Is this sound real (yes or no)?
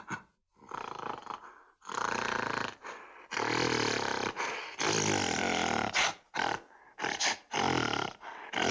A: yes